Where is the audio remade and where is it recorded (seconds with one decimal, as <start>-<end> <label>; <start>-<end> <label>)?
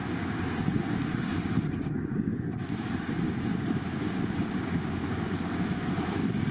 0.0-6.5 remade